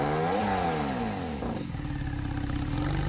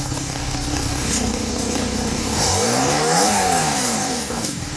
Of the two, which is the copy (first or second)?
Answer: second